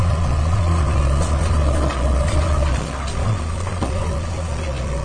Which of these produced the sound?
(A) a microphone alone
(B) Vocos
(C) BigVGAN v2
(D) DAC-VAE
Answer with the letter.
B